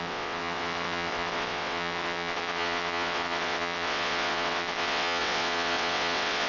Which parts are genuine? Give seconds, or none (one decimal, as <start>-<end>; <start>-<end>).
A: none